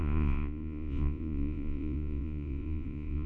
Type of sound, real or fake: fake